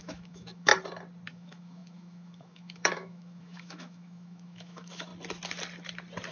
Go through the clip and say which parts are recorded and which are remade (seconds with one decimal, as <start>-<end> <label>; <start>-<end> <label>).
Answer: 0.0-0.7 remade; 0.7-1.3 recorded; 1.3-5.1 remade; 5.1-6.3 recorded